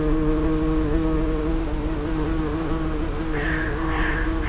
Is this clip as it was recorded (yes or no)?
yes